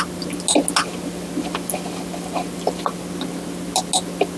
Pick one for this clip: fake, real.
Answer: real